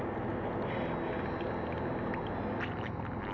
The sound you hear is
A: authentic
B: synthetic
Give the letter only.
A